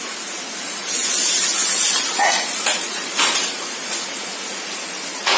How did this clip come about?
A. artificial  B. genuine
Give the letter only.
A